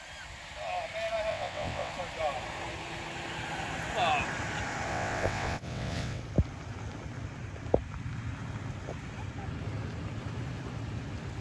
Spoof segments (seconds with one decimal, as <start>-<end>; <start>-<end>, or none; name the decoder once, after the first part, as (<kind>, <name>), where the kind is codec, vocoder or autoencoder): 1.3-1.9 (vocoder, WaveNeXt); 4.9-6.2